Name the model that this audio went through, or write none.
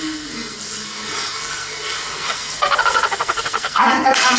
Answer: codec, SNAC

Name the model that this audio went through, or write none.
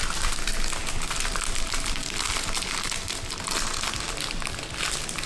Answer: none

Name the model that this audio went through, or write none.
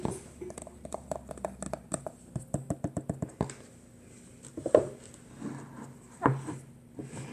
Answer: none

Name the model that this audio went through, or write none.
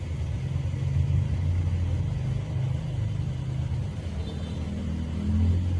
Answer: none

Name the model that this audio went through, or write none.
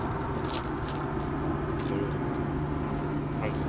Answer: none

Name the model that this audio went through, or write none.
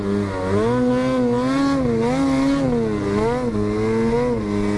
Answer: none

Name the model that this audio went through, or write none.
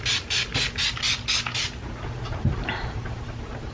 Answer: none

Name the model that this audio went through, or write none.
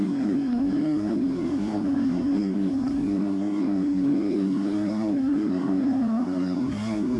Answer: codec, SNAC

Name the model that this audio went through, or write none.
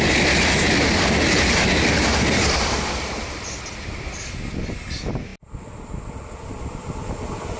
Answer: none